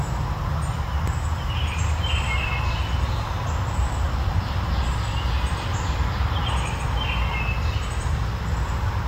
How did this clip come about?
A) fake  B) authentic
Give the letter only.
B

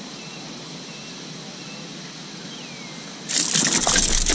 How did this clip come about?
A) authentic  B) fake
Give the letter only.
A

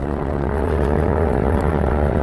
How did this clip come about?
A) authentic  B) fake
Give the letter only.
B